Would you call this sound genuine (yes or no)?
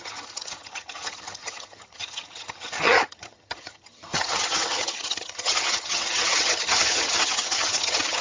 no